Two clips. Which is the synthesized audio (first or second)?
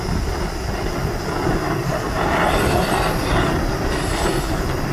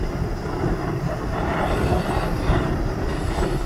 second